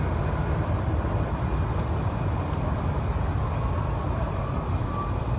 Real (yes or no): yes